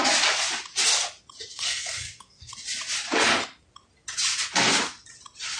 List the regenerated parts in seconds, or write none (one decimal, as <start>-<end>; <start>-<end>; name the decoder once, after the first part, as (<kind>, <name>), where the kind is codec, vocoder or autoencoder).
1.5-2.5 (codec, SNAC)